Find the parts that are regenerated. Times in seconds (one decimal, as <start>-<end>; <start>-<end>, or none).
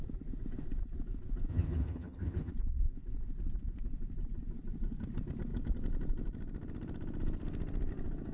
1.5-2.5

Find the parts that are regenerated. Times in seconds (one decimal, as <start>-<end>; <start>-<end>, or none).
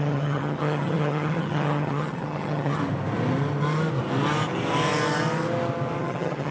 0.0-2.8; 6.0-6.5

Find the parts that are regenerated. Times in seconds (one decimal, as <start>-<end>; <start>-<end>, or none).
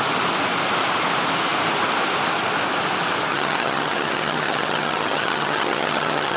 3.3-6.4